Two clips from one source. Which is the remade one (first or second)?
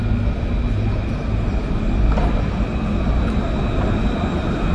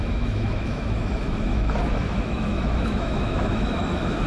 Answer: second